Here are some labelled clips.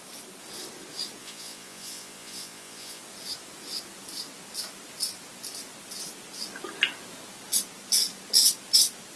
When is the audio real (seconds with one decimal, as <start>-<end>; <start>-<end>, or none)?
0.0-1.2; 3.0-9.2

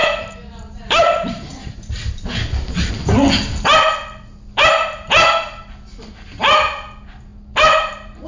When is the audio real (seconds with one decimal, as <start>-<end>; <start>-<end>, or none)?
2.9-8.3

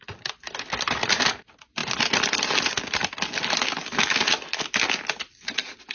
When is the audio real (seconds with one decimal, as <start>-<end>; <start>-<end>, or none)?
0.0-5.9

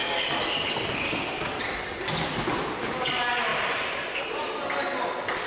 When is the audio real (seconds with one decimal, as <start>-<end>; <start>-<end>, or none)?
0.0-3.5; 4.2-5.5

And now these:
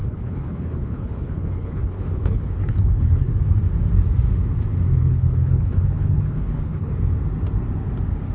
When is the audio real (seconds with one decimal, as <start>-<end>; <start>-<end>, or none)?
3.3-5.0; 6.9-8.3

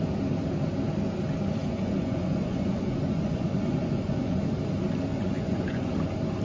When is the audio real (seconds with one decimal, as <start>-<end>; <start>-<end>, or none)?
0.0-1.6; 4.4-5.1; 5.9-6.4

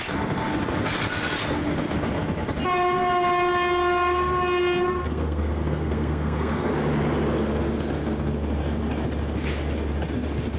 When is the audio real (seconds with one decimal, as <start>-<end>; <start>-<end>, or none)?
0.0-5.0; 6.7-10.6